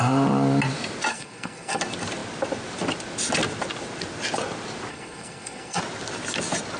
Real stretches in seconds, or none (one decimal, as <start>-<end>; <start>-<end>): 0.0-1.1; 1.8-4.9; 5.8-6.8